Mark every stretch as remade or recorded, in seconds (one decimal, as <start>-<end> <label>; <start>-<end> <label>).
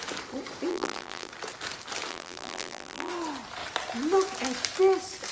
0.0-0.7 recorded; 0.7-1.3 remade; 1.3-2.1 recorded; 2.1-3.1 remade; 3.1-5.3 recorded